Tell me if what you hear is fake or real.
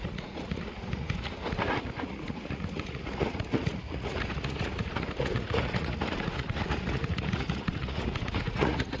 fake